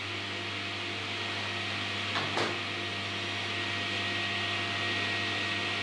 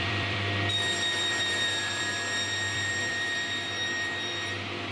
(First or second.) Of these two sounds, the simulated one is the second